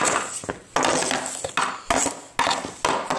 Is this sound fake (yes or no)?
no